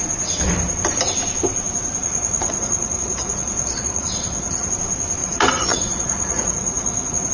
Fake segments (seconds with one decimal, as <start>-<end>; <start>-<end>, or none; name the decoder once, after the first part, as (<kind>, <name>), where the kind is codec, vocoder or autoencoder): 2.0-4.7 (vocoder, Vocos); 5.2-7.3